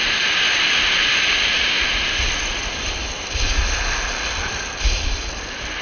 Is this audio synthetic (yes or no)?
no